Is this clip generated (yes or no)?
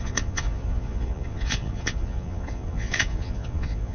yes